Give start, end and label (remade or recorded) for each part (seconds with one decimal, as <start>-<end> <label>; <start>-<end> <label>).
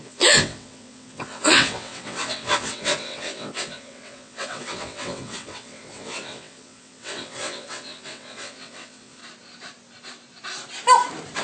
0.0-9.2 remade; 9.2-11.4 recorded